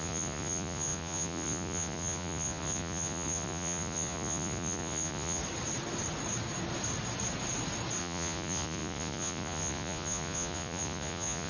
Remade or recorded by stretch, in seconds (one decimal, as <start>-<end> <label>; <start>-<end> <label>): 0.0-5.4 remade; 5.4-8.0 recorded; 8.0-11.5 remade